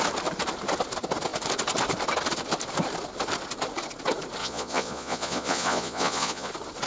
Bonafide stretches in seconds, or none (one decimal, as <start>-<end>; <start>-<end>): 0.0-4.4; 6.5-6.9